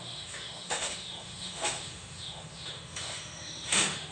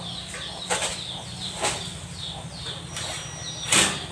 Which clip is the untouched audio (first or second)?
second